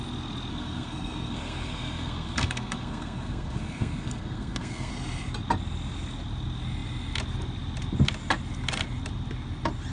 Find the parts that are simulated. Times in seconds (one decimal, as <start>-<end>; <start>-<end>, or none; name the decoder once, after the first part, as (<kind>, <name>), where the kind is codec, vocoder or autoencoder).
0.5-4.9 (codec, SNAC)